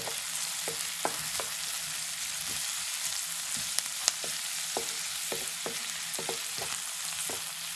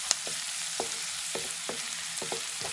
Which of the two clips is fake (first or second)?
second